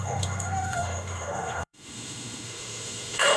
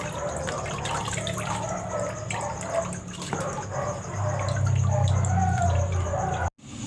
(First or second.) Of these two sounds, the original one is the second